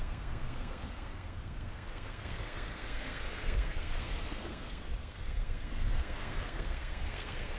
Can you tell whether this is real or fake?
fake